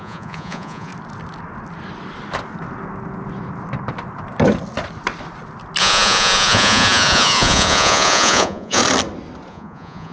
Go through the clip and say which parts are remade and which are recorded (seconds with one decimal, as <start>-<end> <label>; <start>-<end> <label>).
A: 0.0-0.9 remade; 0.9-5.8 recorded; 5.8-8.8 remade; 8.8-9.5 recorded; 9.5-10.1 remade